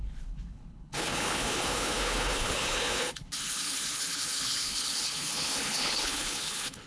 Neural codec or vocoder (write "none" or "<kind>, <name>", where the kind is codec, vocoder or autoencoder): codec, HILCodec